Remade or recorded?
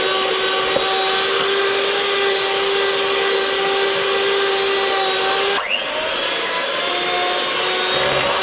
recorded